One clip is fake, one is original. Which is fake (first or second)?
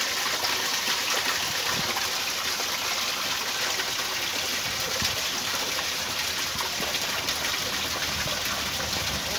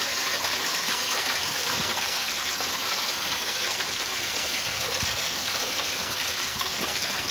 second